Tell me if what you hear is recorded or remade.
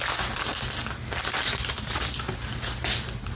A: recorded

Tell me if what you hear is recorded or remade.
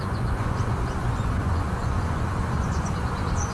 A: remade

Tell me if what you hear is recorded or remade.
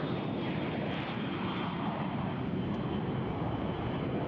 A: recorded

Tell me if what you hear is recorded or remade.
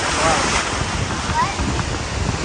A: recorded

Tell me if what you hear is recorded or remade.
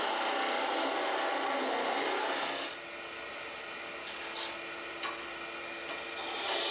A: recorded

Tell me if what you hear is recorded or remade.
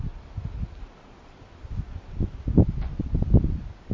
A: recorded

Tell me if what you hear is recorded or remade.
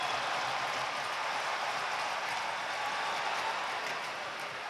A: recorded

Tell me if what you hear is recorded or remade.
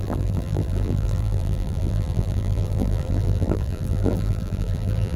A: remade